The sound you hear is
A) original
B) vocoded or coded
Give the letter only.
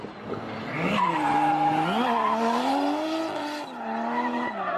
A